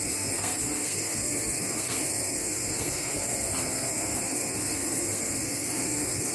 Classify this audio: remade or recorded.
remade